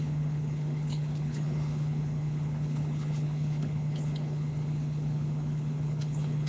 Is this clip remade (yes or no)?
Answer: yes